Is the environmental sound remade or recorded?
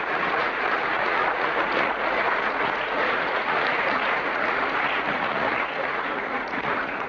remade